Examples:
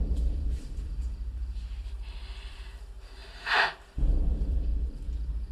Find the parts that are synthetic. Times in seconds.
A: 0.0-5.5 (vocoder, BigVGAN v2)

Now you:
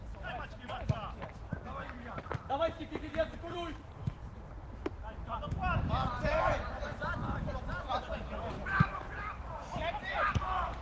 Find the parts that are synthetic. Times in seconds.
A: 0.0-4.2 (vocoder, BigVGAN v2); 8.4-10.8

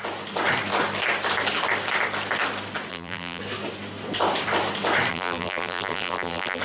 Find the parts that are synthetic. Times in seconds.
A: 2.9-3.4 (vocoder, BigVGAN v2); 5.1-6.6